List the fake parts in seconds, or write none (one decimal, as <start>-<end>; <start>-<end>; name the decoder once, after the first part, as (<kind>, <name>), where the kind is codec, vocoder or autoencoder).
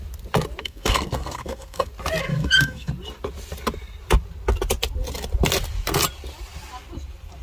0.6-1.9 (codec, SNAC); 2.3-2.9